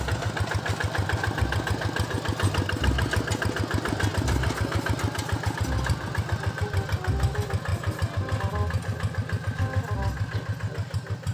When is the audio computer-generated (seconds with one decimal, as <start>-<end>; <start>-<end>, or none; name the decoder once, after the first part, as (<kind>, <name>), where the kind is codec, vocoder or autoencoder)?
none